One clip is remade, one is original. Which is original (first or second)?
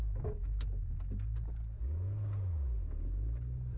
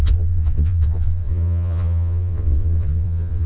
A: first